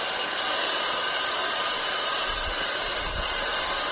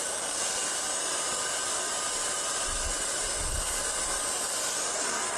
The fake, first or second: first